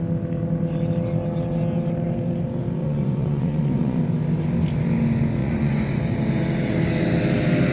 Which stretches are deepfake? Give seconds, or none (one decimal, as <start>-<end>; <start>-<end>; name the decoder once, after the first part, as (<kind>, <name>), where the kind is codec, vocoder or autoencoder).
2.8-4.0 (vocoder, Vocos); 5.4-6.0